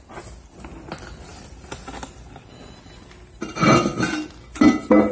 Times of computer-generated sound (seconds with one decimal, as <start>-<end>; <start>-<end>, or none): none